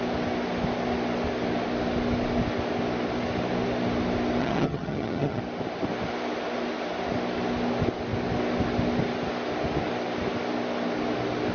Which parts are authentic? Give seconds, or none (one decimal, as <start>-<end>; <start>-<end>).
0.0-4.4; 5.4-11.5

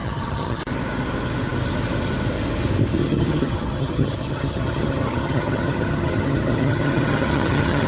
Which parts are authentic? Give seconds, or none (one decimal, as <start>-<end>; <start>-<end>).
0.6-3.0

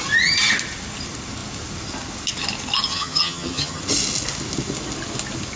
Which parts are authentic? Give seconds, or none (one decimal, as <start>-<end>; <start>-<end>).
0.0-2.9; 3.8-5.6